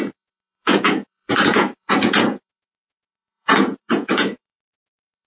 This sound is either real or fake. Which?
fake